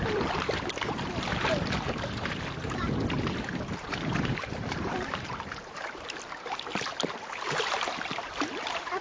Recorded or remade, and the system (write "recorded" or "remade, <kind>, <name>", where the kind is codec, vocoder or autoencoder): remade, vocoder, BigVGAN v2